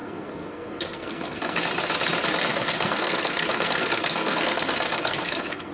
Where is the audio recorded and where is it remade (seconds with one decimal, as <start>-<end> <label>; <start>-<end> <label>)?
0.0-1.6 remade; 1.6-2.5 recorded; 2.5-5.7 remade